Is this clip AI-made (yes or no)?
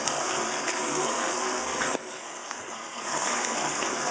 yes